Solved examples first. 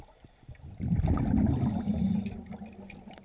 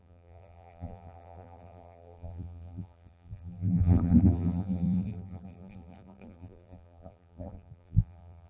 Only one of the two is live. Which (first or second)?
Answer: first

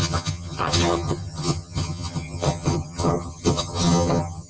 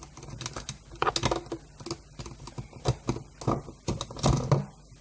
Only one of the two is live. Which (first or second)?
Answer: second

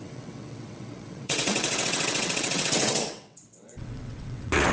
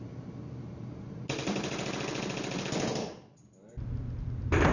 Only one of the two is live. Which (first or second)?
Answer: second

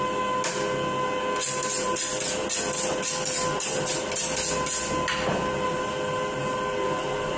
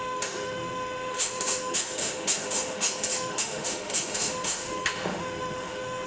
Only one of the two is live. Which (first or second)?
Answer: first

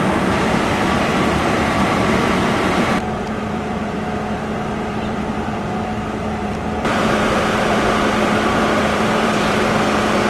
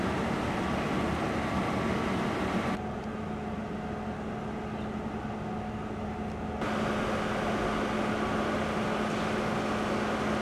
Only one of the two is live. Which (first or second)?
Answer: second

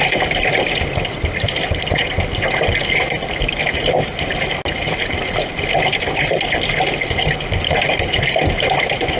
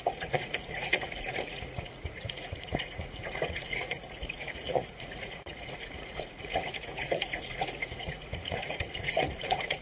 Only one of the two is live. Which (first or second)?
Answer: first